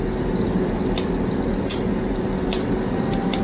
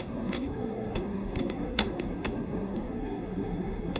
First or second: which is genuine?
first